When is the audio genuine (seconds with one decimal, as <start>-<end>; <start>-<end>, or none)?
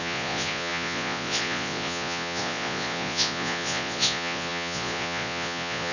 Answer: none